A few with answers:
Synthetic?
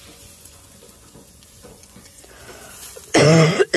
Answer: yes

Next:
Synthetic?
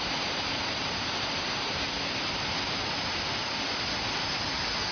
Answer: no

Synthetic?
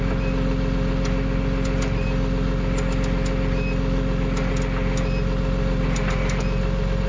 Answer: no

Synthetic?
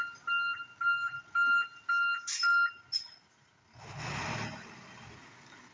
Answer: no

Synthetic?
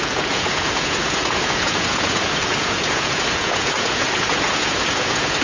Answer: yes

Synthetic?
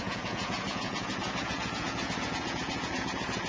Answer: yes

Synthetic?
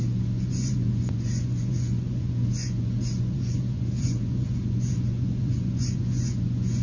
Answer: yes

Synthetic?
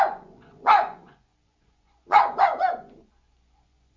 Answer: yes